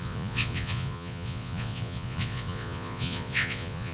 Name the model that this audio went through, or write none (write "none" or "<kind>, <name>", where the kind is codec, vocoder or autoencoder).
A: vocoder, Vocos